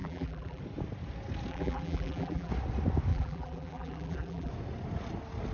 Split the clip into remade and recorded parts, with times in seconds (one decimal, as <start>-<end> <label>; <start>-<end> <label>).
0.0-0.6 remade; 0.6-1.5 recorded; 1.5-2.5 remade; 2.5-3.1 recorded; 3.1-4.5 remade; 4.5-5.5 recorded